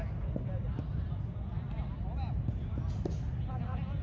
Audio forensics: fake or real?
real